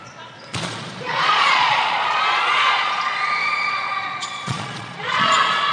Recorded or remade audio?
remade